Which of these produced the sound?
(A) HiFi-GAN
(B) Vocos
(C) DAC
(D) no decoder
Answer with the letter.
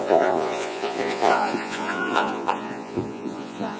B